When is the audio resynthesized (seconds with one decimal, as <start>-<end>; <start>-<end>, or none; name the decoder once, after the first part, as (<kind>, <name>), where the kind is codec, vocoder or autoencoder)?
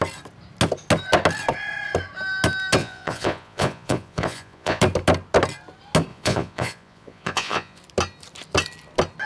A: 2.8-4.8 (vocoder, Vocos); 6.1-7.8